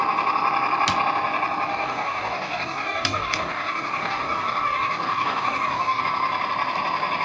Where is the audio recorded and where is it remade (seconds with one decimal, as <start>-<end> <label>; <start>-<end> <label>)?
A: 0.0-1.7 recorded; 1.7-6.0 remade; 6.0-7.2 recorded